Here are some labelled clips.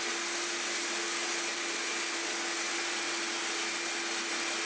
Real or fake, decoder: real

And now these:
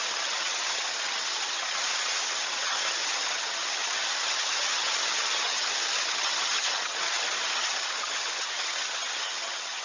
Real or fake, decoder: fake, vocoder, HiFi-GAN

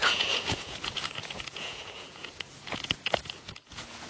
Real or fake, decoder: fake, vocoder, Vocos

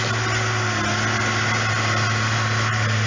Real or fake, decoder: real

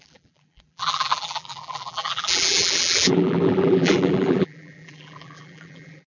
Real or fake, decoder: fake, vocoder, BigVGAN v2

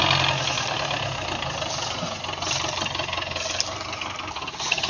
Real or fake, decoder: real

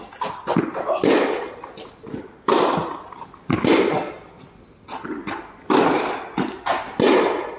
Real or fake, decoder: real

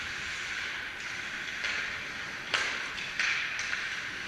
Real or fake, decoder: real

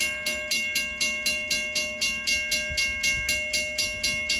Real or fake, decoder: real